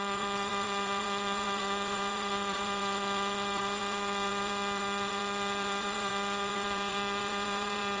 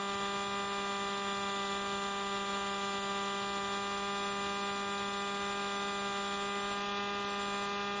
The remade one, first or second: first